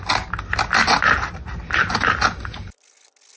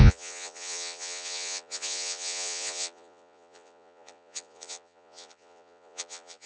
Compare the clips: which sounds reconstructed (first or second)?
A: second